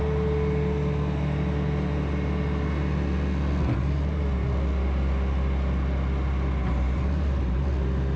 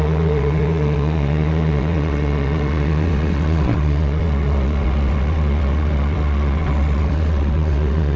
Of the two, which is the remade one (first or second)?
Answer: second